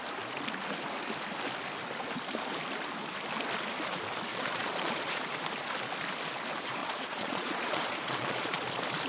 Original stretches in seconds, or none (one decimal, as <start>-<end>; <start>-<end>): 0.0-4.3; 5.2-6.8; 8.7-9.1